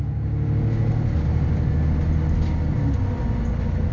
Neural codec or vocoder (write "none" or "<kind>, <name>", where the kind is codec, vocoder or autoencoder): none